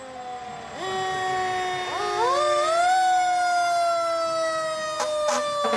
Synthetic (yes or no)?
no